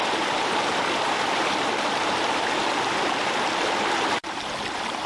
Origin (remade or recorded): remade